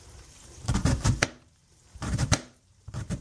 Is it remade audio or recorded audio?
remade